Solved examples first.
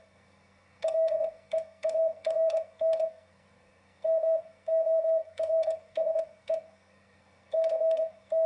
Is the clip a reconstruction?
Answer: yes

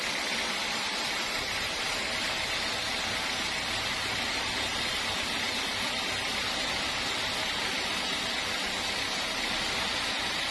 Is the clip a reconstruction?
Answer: no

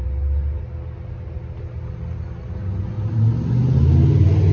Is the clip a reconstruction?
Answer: no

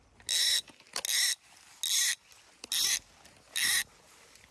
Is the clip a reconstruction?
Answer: no